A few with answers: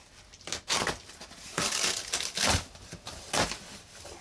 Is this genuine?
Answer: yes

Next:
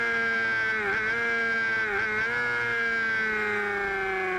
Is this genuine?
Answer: yes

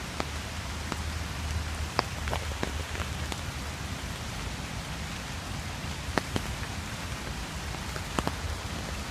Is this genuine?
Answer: yes